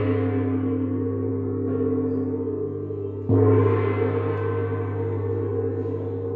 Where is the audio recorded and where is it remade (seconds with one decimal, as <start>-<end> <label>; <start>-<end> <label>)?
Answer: 0.0-6.4 recorded